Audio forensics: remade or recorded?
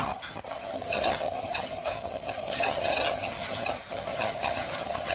remade